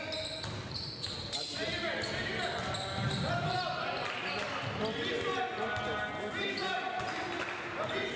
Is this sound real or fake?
real